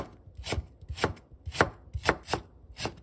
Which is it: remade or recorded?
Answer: recorded